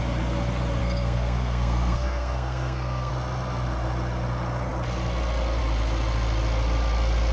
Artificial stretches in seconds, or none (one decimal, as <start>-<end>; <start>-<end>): 0.8-3.1